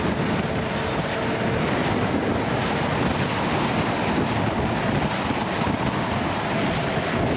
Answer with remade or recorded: recorded